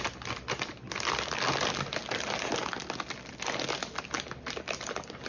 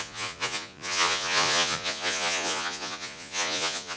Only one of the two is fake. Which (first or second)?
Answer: second